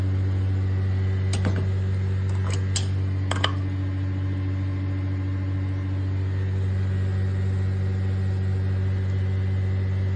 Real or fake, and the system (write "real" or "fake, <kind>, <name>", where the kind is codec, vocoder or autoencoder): real